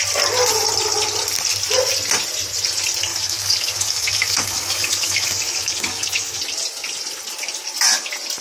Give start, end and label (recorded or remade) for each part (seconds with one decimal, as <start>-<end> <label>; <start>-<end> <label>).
0.0-3.1 recorded; 3.1-6.4 remade; 6.4-8.4 recorded